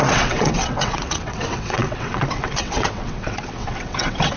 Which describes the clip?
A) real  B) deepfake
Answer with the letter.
B